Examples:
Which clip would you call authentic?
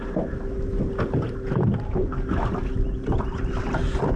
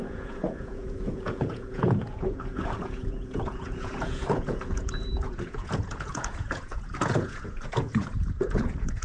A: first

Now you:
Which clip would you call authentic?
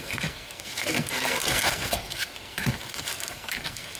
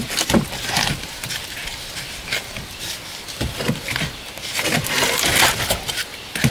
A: second